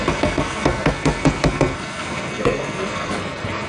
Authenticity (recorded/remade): remade